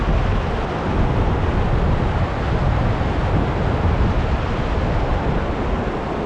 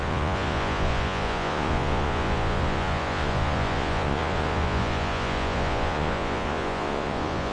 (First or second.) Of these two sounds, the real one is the first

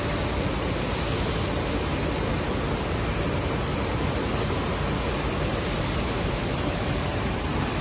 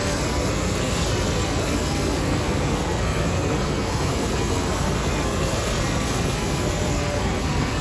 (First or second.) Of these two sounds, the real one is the first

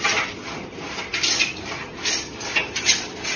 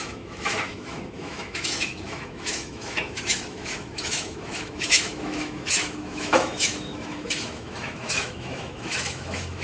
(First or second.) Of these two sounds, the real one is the first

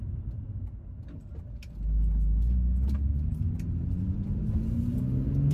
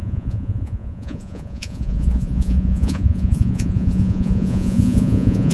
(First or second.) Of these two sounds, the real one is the first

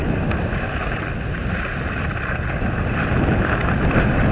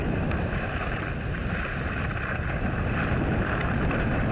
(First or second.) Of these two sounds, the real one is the first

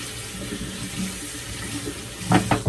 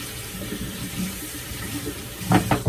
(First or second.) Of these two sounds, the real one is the first